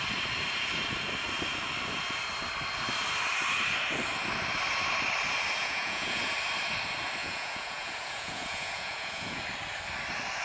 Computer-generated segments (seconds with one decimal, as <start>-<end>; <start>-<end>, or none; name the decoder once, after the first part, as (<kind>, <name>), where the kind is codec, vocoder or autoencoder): 5.6-6.2 (vocoder, Vocos); 7.2-9.4